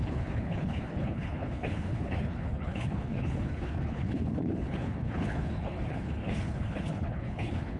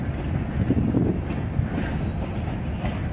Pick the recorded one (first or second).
second